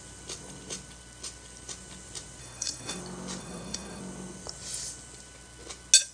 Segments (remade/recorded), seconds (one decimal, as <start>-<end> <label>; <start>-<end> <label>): 0.0-2.4 recorded; 2.4-3.0 remade; 3.0-3.4 recorded; 3.4-4.0 remade; 4.0-6.1 recorded